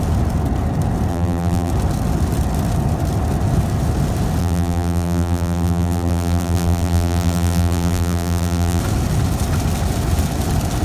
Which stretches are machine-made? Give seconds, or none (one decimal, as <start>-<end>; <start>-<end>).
1.1-1.7; 4.4-8.8